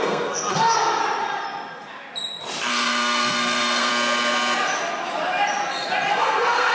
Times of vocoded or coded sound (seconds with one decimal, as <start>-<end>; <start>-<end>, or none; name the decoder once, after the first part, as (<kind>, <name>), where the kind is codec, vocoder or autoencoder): 0.0-1.0 (codec, SNAC); 2.7-3.9; 6.1-6.7